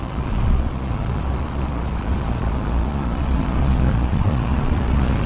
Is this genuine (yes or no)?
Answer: no